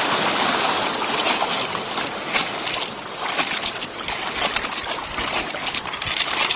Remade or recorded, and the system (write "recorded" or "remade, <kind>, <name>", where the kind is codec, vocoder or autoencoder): recorded